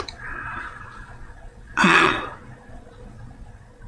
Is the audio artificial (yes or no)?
yes